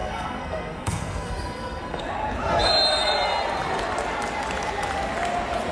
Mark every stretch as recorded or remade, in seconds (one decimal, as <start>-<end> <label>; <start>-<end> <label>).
0.0-2.0 remade; 2.0-5.7 recorded